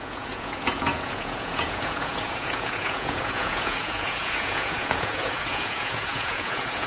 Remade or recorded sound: remade